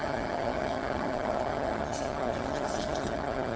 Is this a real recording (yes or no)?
no